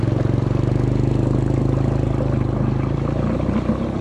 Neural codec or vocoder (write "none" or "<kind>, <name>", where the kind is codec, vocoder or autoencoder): none